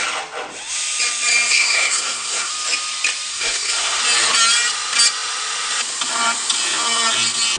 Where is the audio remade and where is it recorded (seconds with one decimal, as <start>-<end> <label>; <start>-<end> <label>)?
0.0-1.5 recorded; 1.5-2.5 remade; 2.5-3.3 recorded; 3.3-4.0 remade; 4.0-7.6 recorded